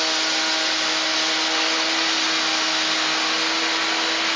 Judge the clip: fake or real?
real